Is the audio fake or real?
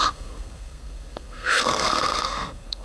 fake